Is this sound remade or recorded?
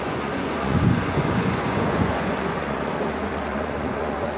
remade